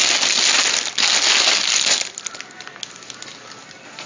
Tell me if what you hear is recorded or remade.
recorded